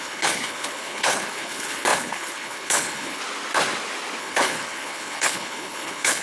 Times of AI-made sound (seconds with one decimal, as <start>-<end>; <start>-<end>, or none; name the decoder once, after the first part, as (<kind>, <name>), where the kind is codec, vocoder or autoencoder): 0.0-3.2 (codec, HILCodec); 4.2-6.2

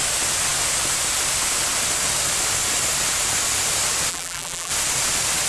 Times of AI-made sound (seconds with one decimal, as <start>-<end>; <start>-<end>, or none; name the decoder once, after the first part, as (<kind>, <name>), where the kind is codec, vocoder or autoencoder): 4.1-4.7 (vocoder, BigVGAN v2)